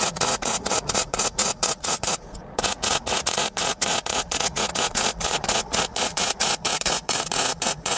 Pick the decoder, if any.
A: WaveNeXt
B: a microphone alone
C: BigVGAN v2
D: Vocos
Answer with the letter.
D